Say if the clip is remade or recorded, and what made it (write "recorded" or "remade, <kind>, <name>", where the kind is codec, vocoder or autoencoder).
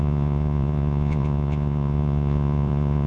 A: remade, vocoder, Vocos